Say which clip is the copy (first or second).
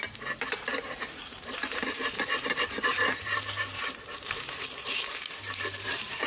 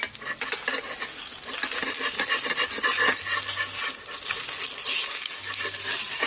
first